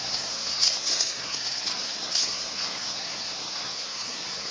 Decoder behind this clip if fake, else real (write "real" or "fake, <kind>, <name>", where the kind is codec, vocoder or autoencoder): fake, codec, SNAC